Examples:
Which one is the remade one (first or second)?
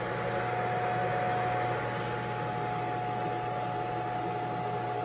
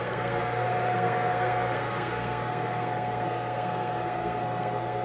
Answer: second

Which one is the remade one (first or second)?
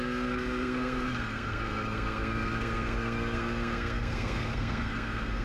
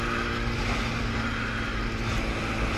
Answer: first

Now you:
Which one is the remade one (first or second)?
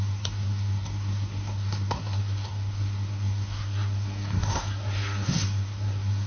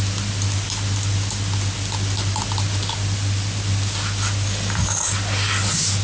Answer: first